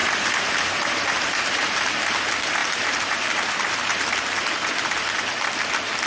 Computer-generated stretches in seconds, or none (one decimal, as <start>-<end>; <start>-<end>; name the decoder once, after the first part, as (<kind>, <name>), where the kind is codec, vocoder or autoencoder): 0.0-1.8 (vocoder, BigVGAN v2); 2.6-4.1